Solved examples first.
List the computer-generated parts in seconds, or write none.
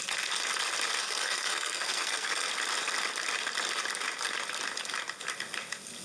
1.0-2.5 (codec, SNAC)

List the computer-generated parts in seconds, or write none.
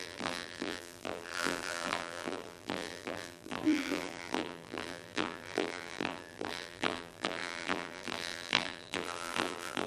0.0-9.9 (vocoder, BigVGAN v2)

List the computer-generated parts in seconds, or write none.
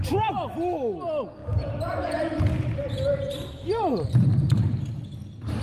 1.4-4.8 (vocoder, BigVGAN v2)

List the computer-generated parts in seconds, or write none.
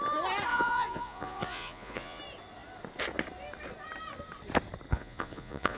0.5-2.2 (vocoder, Vocos); 4.9-5.8